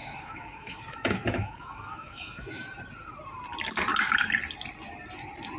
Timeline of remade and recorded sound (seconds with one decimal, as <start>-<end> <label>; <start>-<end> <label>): 0.0-2.7 remade; 2.7-5.6 recorded